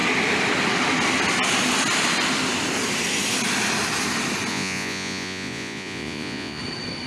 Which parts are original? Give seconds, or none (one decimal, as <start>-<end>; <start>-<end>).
0.0-4.5; 6.6-7.1